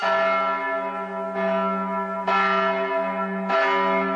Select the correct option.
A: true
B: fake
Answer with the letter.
A